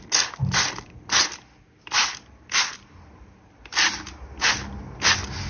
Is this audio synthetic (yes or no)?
no